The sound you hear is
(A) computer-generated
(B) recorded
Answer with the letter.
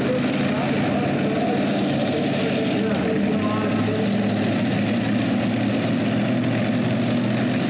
B